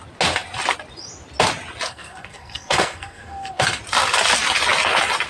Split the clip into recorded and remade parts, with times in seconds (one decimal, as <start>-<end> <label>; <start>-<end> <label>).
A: 0.0-1.9 recorded; 1.9-3.8 remade; 3.8-5.3 recorded